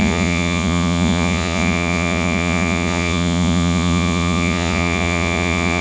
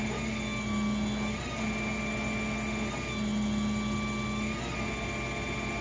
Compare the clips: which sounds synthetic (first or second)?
first